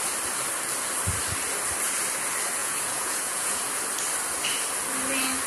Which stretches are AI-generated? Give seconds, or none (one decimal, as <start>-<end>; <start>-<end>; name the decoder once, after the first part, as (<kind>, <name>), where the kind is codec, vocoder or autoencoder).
2.6-3.8 (vocoder, Vocos)